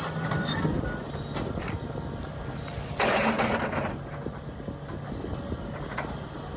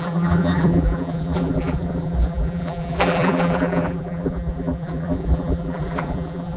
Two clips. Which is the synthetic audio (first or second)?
second